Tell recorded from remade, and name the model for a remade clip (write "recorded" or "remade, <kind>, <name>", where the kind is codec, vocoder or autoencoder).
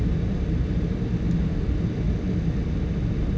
recorded